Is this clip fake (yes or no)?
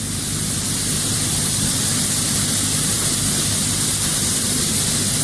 no